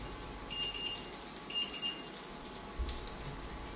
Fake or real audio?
real